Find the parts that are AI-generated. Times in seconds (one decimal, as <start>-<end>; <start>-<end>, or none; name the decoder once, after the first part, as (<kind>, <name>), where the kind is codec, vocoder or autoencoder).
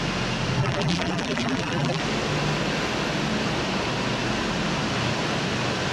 0.6-2.0 (vocoder, BigVGAN v2)